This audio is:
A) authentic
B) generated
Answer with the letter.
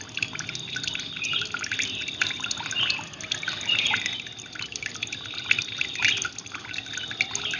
A